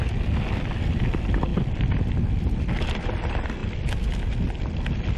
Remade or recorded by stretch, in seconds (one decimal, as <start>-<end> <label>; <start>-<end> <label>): 0.0-5.2 recorded